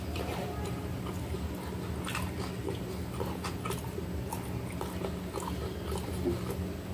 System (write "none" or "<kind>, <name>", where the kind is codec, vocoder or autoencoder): none